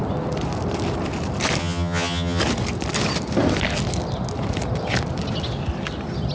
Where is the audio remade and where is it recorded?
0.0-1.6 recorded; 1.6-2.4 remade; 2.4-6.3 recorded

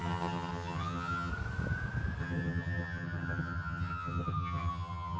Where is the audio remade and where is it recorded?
0.0-1.3 remade; 1.3-2.2 recorded; 2.2-5.2 remade

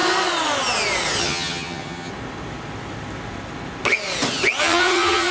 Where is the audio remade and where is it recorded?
0.0-1.2 recorded; 1.2-2.1 remade; 2.1-4.6 recorded; 4.6-5.3 remade

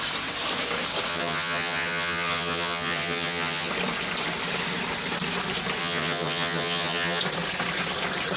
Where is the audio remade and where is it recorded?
0.0-1.1 recorded; 1.1-3.7 remade; 3.7-5.8 recorded; 5.8-7.2 remade; 7.2-8.4 recorded

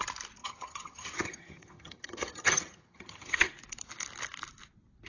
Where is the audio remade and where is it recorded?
0.0-0.4 recorded; 0.4-3.5 remade; 3.5-5.1 recorded